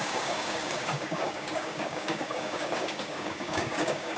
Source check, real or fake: fake